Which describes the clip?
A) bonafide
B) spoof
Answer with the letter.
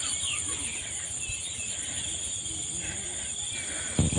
A